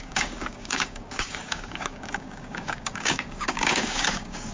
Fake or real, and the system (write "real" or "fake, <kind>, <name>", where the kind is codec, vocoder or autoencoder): fake, codec, DAC